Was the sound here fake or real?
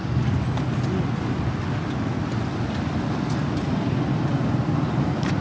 real